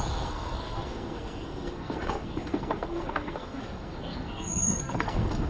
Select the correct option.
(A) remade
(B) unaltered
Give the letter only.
A